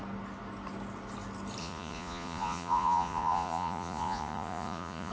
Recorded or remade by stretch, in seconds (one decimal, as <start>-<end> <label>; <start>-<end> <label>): 0.0-1.6 recorded; 1.6-5.1 remade

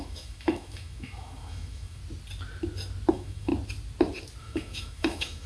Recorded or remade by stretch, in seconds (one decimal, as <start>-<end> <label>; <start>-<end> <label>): 0.0-2.0 remade; 2.0-3.1 recorded; 3.1-3.5 remade; 3.5-4.4 recorded; 4.4-5.5 remade

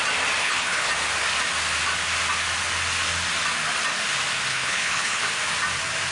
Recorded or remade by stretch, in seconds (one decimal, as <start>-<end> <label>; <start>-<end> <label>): 0.0-0.4 recorded; 0.4-0.9 remade; 0.9-4.5 recorded; 4.5-5.2 remade; 5.2-6.1 recorded

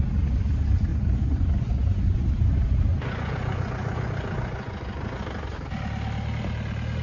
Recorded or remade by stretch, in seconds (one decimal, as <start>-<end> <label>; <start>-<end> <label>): 0.0-0.9 recorded; 0.9-2.2 remade; 2.2-2.9 recorded; 2.9-5.2 remade; 5.2-7.0 recorded

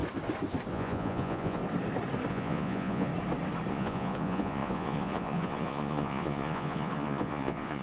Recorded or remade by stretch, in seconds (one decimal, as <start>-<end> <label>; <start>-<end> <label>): 0.0-0.7 recorded; 0.7-1.6 remade; 1.6-2.3 recorded; 2.3-3.1 remade; 3.1-3.7 recorded; 3.7-7.8 remade

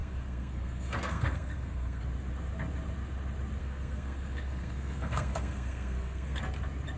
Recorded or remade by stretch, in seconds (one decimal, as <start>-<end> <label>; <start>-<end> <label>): 0.0-2.0 remade; 2.0-3.6 recorded; 3.6-6.4 remade; 6.4-7.0 recorded

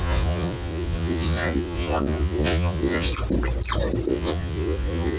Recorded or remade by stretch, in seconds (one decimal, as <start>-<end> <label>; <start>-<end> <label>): 0.0-3.1 remade; 3.1-4.1 recorded; 4.1-5.2 remade